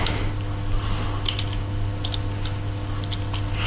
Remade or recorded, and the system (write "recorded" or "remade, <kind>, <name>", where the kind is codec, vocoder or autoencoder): recorded